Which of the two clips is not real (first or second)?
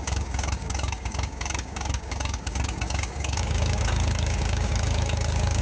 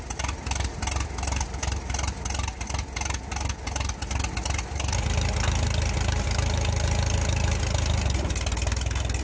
first